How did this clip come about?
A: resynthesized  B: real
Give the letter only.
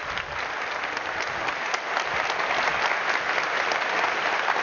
B